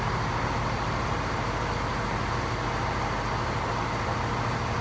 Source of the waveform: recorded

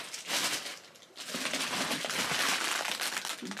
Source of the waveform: recorded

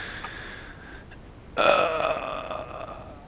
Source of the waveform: recorded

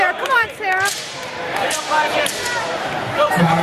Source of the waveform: remade